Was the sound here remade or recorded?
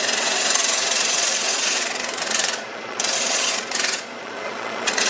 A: remade